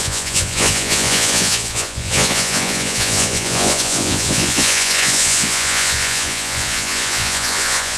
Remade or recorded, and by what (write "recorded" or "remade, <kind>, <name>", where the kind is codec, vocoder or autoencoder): remade, vocoder, Vocos